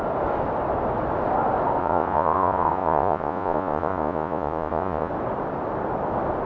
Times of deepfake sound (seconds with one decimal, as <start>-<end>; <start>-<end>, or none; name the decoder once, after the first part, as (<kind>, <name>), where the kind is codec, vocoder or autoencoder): 1.8-5.1 (vocoder, Vocos)